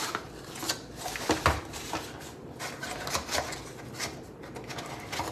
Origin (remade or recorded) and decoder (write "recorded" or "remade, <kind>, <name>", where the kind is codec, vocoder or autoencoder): recorded